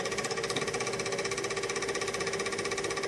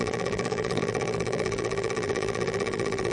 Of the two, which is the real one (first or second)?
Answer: first